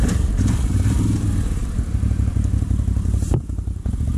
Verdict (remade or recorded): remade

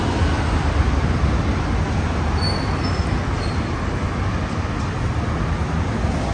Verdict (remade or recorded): recorded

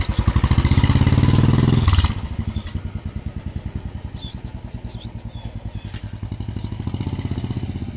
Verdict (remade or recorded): recorded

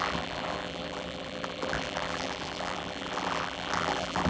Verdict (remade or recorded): remade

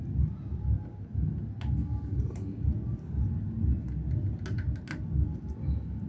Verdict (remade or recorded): recorded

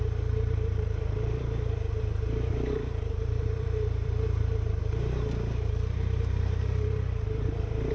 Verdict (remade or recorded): remade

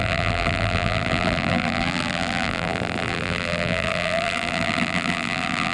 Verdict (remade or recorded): remade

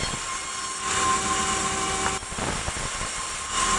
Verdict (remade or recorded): recorded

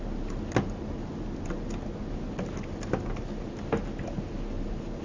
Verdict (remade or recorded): recorded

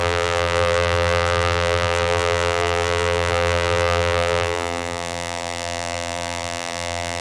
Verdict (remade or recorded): remade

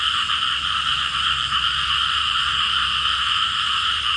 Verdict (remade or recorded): remade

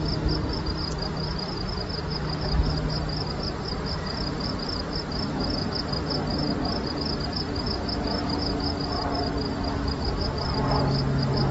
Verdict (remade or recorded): recorded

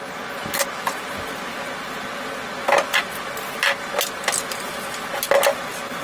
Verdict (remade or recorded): recorded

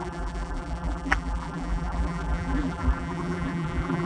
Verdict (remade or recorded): remade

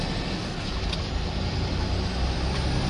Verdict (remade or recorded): recorded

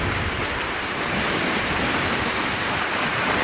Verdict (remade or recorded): remade